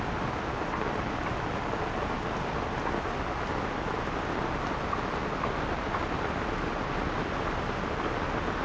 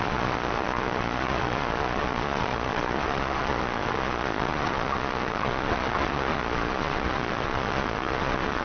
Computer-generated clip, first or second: second